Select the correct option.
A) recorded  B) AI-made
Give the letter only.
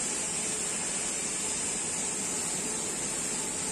A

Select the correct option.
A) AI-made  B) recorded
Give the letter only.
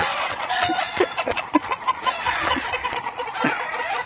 A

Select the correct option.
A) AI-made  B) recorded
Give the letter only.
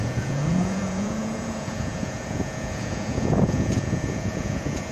A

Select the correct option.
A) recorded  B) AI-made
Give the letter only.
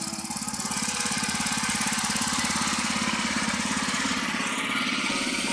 B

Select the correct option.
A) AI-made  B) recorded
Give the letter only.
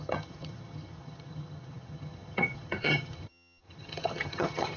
A